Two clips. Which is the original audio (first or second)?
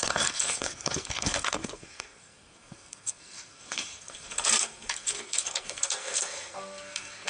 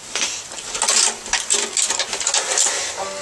second